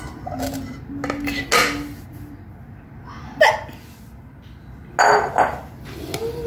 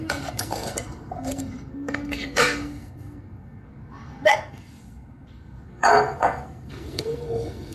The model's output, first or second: second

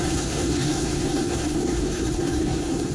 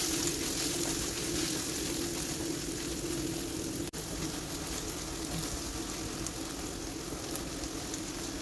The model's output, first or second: first